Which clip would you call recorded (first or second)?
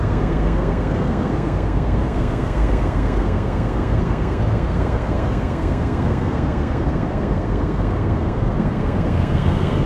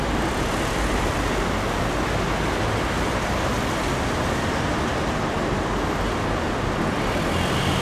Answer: second